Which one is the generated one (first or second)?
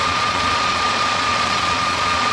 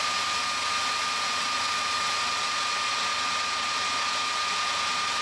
first